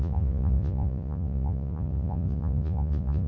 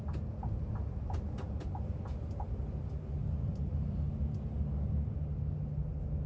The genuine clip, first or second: second